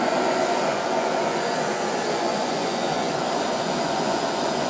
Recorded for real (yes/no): no